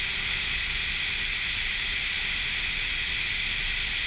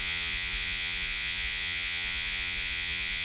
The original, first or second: first